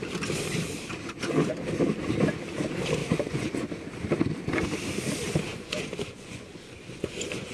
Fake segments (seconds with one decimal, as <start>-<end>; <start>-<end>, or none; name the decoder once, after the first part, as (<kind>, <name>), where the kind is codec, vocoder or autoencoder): 3.0-3.6 (vocoder, Vocos); 5.5-7.5